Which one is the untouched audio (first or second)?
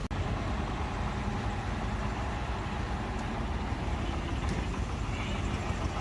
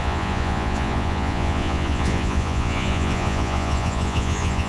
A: first